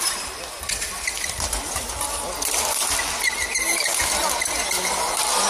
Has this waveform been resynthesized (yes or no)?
no